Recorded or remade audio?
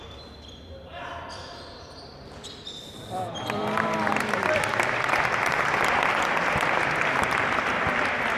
remade